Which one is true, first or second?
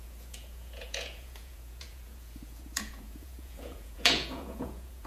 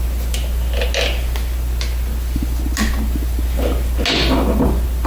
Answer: second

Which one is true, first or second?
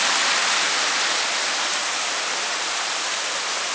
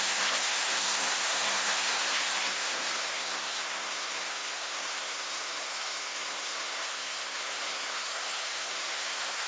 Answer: first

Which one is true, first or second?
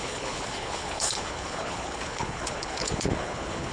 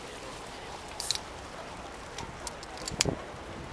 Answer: second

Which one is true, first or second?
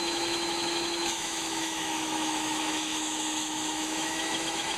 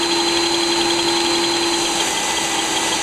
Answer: second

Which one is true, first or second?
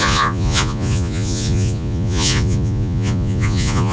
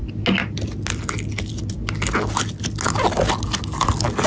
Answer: second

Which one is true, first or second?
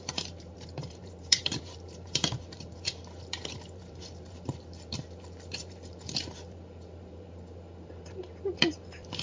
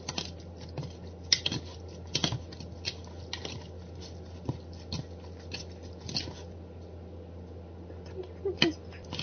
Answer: second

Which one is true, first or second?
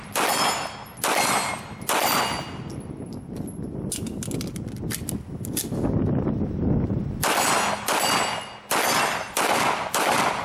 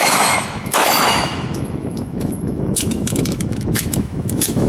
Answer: first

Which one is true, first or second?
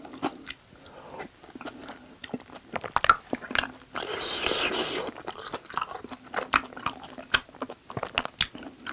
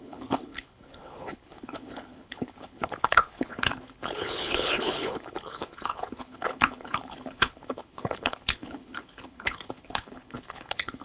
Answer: first